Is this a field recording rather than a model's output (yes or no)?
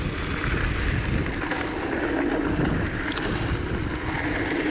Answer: yes